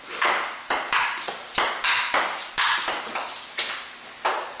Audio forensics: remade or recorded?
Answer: recorded